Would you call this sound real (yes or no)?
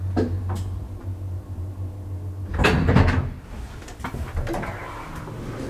yes